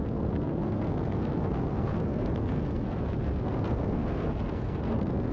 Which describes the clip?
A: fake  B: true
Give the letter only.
A